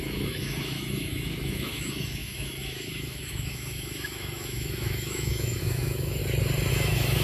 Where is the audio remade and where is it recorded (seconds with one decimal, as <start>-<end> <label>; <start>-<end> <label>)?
0.0-6.2 remade; 6.2-6.7 recorded; 6.7-7.2 remade